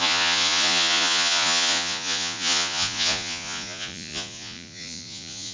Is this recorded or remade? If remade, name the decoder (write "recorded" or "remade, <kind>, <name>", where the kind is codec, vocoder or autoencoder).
remade, vocoder, Vocos